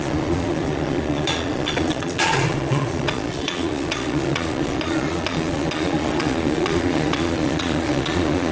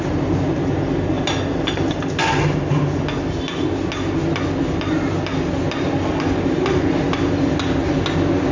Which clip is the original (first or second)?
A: second